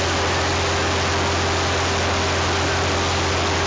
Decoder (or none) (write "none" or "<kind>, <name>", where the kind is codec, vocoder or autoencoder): none